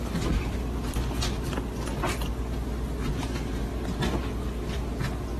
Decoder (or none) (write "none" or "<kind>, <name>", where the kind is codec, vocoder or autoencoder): none